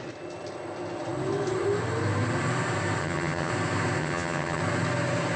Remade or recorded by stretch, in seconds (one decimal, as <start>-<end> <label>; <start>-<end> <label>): 0.0-3.0 recorded; 3.0-3.5 remade; 3.5-4.0 recorded; 4.0-4.6 remade; 4.6-5.4 recorded